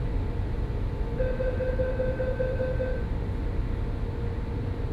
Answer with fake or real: real